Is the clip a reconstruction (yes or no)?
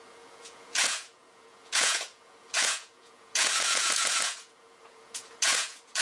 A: yes